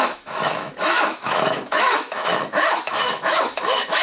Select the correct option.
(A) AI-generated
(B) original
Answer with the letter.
A